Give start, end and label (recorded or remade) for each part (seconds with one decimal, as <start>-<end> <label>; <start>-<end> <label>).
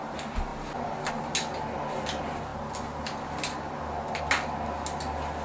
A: 0.0-5.4 recorded